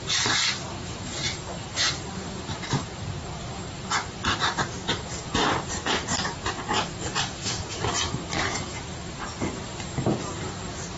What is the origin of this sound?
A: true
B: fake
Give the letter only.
B